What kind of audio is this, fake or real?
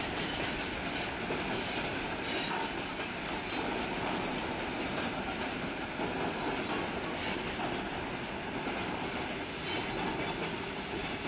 real